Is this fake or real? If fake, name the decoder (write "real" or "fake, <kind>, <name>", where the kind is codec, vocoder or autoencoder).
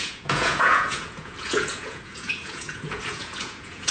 fake, vocoder, Vocos